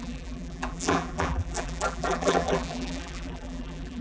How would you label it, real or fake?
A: fake